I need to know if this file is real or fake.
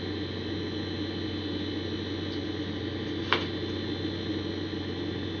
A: real